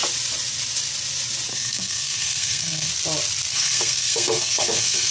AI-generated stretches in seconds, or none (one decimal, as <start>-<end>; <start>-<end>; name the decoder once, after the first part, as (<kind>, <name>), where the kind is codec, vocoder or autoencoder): 1.5-2.9 (codec, SNAC); 3.5-5.1